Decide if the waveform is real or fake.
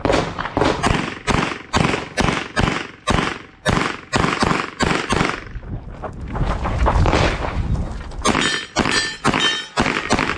real